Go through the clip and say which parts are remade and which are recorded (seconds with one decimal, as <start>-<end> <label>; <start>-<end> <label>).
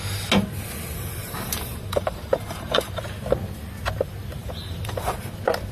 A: 0.0-1.2 recorded; 1.2-3.0 remade; 3.0-4.4 recorded; 4.4-5.1 remade; 5.1-5.7 recorded